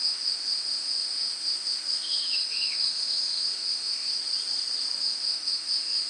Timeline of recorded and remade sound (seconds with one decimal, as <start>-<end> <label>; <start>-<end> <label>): 0.0-4.2 remade; 4.2-5.0 recorded; 5.0-6.1 remade